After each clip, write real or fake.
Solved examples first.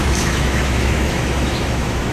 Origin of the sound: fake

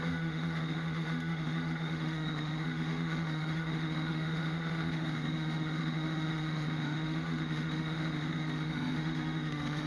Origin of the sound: fake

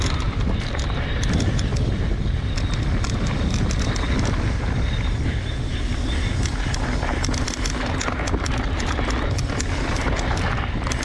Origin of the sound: real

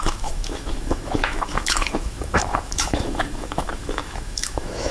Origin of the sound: fake